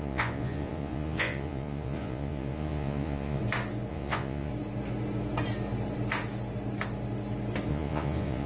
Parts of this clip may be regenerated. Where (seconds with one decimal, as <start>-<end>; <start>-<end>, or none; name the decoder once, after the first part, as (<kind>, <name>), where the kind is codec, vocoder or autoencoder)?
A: 0.0-3.4 (vocoder, Vocos); 3.9-4.5; 7.7-8.5